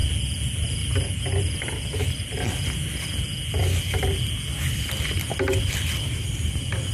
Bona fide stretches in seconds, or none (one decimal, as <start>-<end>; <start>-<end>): 0.0-6.9